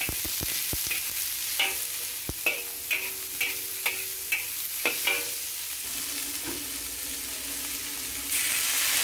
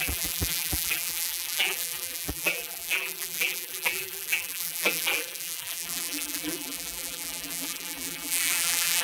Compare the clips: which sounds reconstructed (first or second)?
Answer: second